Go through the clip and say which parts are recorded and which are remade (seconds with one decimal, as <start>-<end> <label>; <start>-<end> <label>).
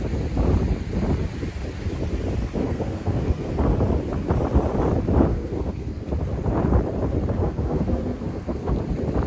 0.0-2.6 recorded; 2.6-3.5 remade; 3.5-5.3 recorded; 5.3-6.1 remade; 6.1-7.4 recorded; 7.4-8.7 remade; 8.7-9.3 recorded